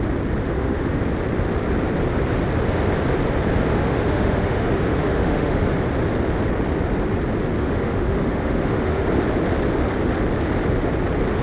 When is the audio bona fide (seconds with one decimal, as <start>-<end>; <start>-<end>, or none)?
0.0-0.4; 1.0-3.7; 5.6-7.6; 9.1-11.4